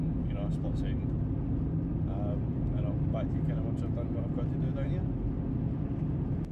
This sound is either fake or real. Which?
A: real